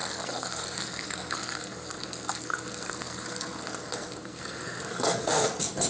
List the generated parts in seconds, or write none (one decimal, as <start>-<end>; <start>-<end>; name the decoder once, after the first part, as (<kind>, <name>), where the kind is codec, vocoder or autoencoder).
0.0-5.9 (codec, SNAC)